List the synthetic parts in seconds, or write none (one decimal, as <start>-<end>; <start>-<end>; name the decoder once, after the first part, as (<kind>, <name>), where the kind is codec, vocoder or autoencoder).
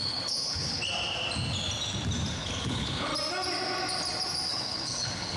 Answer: 0.0-0.8 (codec, HILCodec); 2.3-3.1; 4.5-5.4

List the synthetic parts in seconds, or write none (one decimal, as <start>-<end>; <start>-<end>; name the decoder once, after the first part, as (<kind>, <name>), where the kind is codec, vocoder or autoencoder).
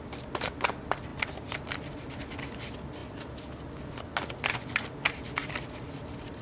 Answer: none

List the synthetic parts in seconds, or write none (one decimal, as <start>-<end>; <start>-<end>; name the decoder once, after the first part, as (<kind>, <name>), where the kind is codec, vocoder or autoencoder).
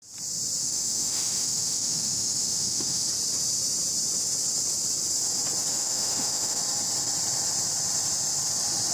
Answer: 0.6-3.1 (autoencoder, DAC-VAE); 5.7-6.6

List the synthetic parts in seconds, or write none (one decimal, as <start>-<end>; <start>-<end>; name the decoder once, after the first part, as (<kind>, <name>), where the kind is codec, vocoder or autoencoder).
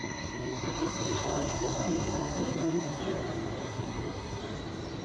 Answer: 0.0-3.0 (codec, SNAC); 3.6-4.4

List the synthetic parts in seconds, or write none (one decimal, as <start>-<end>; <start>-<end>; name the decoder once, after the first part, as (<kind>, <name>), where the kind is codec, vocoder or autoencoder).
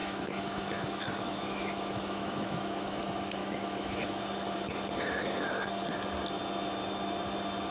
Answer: 0.0-3.0 (autoencoder, DAC-VAE); 3.4-4.2